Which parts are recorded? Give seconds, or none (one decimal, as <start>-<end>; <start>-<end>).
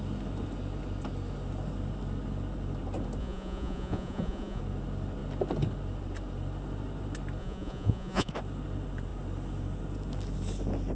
0.0-3.2; 4.6-7.4; 8.3-10.9